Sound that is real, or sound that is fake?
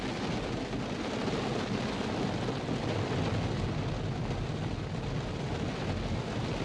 real